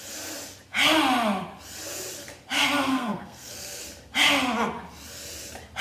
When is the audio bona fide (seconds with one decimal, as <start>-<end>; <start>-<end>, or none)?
0.0-2.9; 3.8-5.8

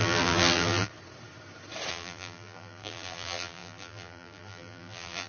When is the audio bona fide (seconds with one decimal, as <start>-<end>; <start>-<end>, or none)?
0.9-1.9

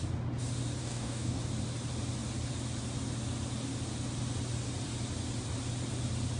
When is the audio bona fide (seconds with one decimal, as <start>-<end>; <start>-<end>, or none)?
0.0-0.8; 1.4-6.4

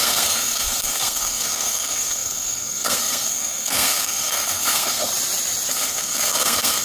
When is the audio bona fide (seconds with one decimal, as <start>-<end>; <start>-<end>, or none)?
5.1-5.7

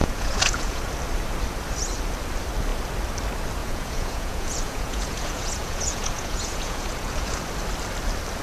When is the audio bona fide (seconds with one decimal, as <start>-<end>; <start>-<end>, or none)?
0.8-3.6; 7.5-8.4

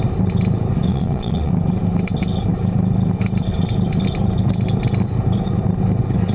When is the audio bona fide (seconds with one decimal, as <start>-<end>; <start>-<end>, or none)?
0.0-0.9; 1.5-6.3

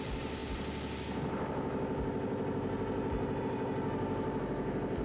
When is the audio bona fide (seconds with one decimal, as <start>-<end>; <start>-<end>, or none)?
0.0-5.0

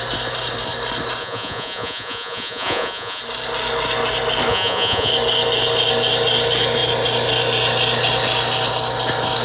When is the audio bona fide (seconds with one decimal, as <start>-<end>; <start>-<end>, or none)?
0.0-1.2; 3.2-4.5; 5.1-9.4